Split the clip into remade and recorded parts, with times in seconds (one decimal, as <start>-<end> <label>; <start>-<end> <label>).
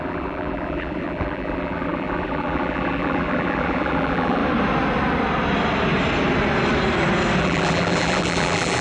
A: 0.0-4.4 remade; 4.4-7.4 recorded; 7.4-8.8 remade